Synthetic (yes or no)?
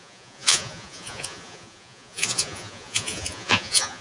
yes